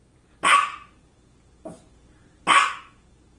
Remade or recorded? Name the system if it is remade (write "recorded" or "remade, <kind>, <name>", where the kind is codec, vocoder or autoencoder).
recorded